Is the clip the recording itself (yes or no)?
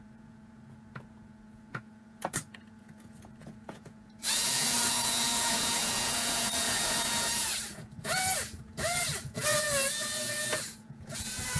no